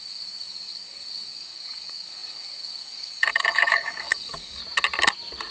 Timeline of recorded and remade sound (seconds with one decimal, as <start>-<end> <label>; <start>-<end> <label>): 0.0-4.6 remade; 4.6-5.5 recorded